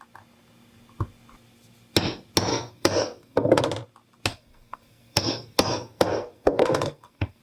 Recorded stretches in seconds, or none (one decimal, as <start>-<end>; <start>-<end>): 0.0-2.5; 3.6-4.3